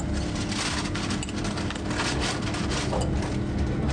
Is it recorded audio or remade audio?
recorded